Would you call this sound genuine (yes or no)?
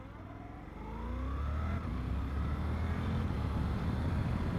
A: yes